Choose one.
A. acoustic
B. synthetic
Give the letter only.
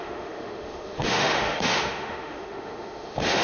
B